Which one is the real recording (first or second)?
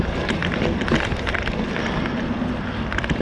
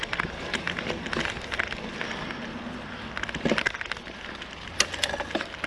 second